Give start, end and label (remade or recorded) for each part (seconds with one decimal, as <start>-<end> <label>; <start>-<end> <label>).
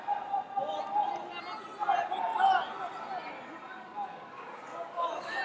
0.0-3.7 recorded; 3.7-5.4 remade